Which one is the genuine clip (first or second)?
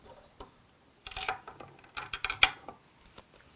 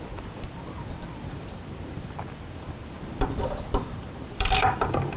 first